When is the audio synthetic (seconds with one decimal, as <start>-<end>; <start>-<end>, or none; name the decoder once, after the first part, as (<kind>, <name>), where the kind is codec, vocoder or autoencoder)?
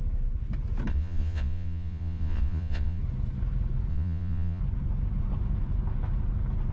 0.9-3.0 (vocoder, Vocos); 3.9-4.6